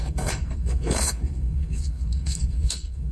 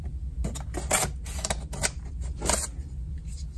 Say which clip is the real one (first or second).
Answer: second